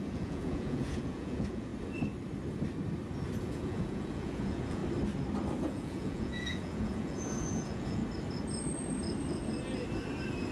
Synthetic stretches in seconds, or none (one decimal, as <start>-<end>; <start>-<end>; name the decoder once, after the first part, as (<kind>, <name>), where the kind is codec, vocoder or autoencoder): 0.0-1.7 (vocoder, Vocos); 3.4-4.8; 5.6-8.0